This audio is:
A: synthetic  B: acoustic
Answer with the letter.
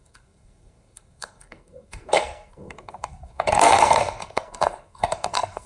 A